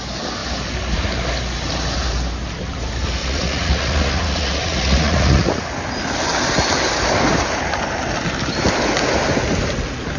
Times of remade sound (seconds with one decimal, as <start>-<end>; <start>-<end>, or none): 3.2-5.7